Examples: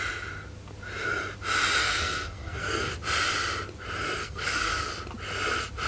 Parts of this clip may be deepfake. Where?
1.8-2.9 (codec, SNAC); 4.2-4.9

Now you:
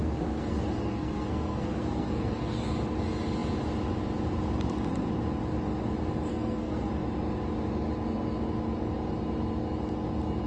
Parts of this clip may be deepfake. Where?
0.0-2.7 (codec, SNAC); 6.3-6.9